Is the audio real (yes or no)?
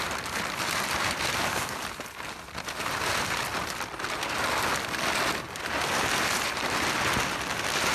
yes